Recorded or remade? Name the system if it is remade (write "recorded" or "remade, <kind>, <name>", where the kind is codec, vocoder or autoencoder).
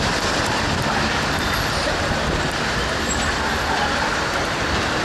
remade, vocoder, BigVGAN v2